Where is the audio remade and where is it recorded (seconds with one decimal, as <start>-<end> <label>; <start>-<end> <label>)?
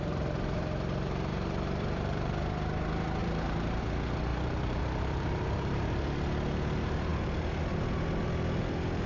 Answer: 0.0-1.3 recorded; 1.3-2.3 remade; 2.3-3.2 recorded; 3.2-3.8 remade; 3.8-4.3 recorded; 4.3-5.9 remade; 5.9-9.1 recorded